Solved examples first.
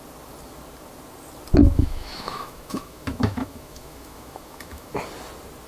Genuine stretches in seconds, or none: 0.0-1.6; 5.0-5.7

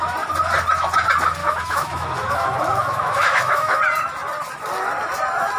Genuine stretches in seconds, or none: 0.0-1.4; 3.8-5.6

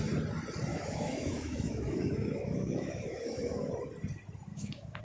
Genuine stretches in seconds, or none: 0.0-0.7; 3.7-4.5

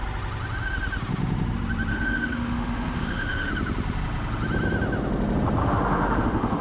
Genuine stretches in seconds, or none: 0.0-1.9; 3.5-5.6

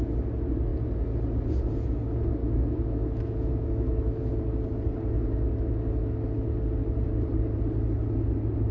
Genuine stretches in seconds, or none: 0.0-2.4; 4.3-8.7

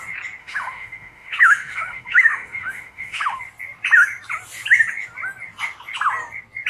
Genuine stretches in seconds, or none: 0.0-0.4; 3.4-6.7

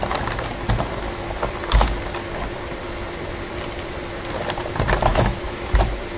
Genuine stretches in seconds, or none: 0.0-5.1; 5.7-6.2

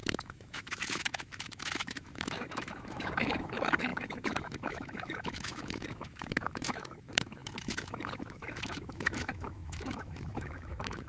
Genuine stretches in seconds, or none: none